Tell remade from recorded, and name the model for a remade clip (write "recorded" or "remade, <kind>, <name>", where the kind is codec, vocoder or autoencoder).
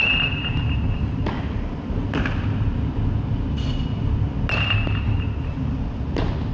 recorded